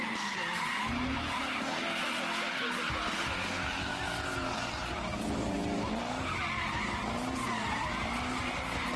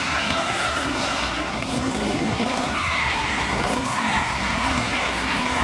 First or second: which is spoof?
second